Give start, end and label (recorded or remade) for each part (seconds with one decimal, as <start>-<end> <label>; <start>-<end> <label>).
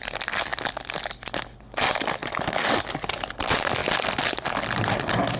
0.0-5.4 recorded